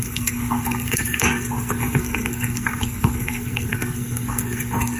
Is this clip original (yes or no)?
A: no